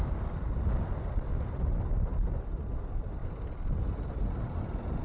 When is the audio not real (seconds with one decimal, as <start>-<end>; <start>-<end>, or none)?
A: none